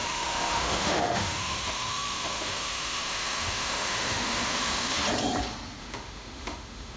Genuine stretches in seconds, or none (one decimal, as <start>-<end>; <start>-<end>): 5.0-5.8